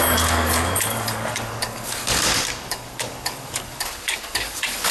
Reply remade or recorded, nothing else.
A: remade